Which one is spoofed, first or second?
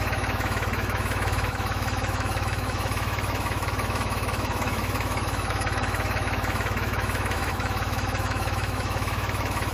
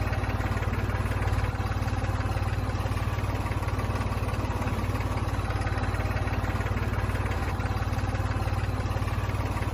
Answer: first